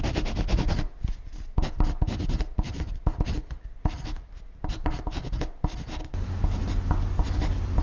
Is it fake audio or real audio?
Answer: real